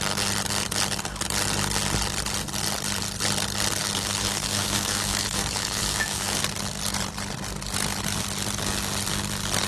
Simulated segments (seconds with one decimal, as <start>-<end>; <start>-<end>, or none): 3.8-6.4